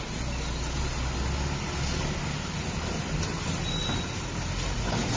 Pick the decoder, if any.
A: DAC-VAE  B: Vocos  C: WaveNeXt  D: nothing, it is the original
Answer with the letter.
D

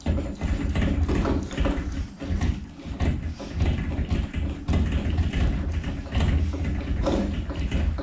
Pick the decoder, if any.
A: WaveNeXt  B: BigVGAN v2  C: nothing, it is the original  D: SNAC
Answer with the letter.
C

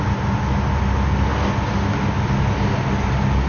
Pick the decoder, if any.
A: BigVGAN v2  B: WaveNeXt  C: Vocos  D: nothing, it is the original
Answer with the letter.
D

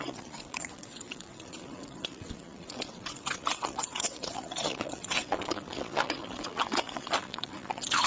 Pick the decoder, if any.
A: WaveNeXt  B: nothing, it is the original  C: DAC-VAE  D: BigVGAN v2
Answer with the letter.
A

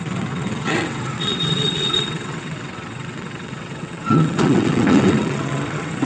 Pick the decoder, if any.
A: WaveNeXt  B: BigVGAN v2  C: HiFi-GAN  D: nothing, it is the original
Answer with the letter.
A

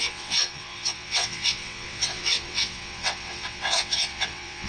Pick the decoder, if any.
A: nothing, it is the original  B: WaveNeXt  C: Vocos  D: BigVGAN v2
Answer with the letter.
B